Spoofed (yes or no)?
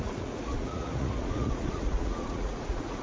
yes